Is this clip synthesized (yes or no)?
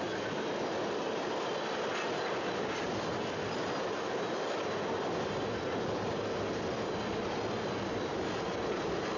no